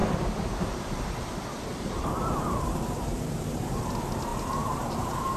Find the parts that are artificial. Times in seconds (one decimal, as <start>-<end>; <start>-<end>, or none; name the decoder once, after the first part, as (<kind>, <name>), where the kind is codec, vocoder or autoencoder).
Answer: 1.7-3.9 (vocoder, BigVGAN v2); 4.3-5.4